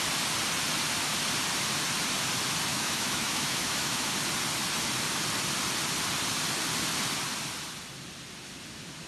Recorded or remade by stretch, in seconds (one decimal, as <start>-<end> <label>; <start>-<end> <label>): 0.0-2.7 recorded; 2.7-4.1 remade; 4.1-9.1 recorded